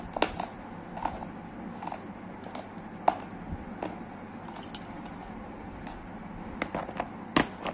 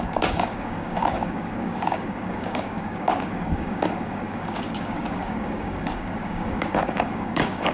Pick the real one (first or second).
first